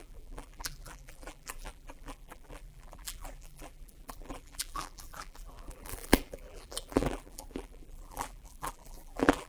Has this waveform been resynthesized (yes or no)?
yes